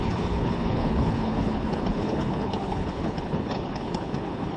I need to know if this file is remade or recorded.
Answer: remade